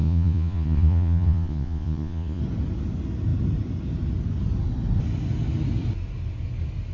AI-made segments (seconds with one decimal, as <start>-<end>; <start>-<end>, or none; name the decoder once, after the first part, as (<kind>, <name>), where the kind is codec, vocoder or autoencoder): 0.0-2.4 (vocoder, Vocos)